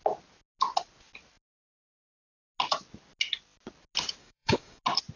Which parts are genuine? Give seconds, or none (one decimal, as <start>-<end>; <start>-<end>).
0.0-4.2; 4.8-5.2